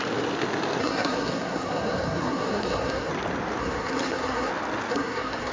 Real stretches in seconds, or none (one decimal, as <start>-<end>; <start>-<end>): 0.0-0.8; 3.1-3.6; 4.5-4.9